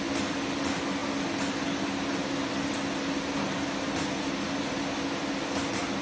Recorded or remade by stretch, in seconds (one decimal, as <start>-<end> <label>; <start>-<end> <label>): 0.0-6.0 recorded